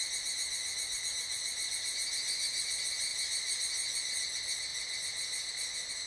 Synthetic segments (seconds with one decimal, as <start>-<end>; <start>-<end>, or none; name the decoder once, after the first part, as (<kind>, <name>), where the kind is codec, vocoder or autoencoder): none

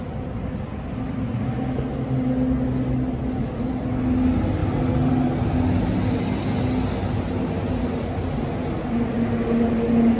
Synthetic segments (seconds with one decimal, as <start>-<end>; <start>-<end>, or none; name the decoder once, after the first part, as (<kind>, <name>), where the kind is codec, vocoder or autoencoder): none

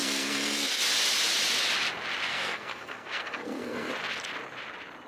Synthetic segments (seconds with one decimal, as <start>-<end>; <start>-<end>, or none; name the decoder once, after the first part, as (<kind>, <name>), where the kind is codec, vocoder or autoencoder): 0.0-0.8 (codec, SNAC); 2.3-3.9

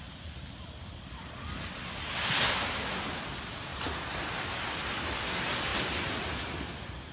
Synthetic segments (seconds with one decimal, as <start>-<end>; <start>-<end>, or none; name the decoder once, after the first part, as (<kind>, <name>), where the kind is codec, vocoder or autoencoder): none